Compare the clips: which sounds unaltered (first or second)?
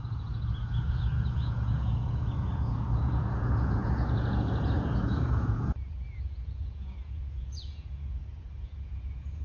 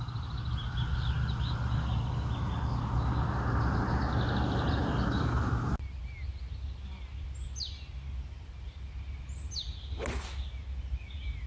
second